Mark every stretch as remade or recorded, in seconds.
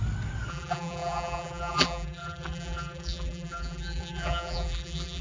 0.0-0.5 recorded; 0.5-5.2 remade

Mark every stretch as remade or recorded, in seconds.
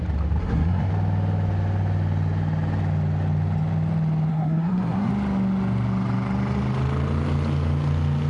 0.0-0.4 recorded; 0.4-0.9 remade; 0.9-4.3 recorded; 4.3-5.1 remade; 5.1-8.3 recorded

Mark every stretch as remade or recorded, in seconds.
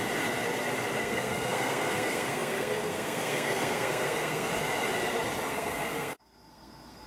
0.0-1.0 recorded; 1.0-4.5 remade; 4.5-5.5 recorded; 5.5-7.1 remade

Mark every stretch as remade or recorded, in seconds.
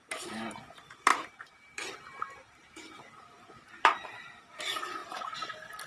0.0-5.0 remade; 5.0-5.9 recorded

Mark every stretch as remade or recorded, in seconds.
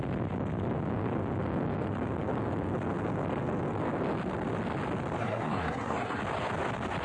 0.0-5.2 recorded; 5.2-6.2 remade; 6.2-7.0 recorded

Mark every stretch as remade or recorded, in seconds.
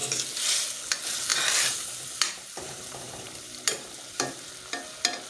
0.0-1.3 recorded; 1.3-4.5 remade; 4.5-5.3 recorded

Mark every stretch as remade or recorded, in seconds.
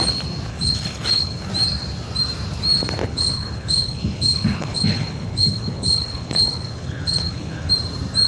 0.0-0.5 recorded; 0.5-1.5 remade; 1.5-3.0 recorded; 3.0-7.7 remade; 7.7-8.3 recorded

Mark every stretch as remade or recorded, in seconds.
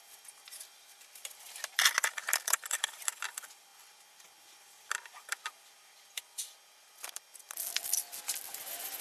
0.0-9.0 recorded